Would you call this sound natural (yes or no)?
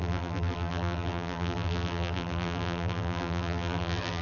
no